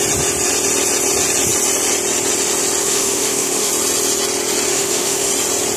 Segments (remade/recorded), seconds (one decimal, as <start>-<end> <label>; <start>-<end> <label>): 0.0-2.8 recorded; 2.8-3.7 remade; 3.7-4.7 recorded; 4.7-5.3 remade; 5.3-5.8 recorded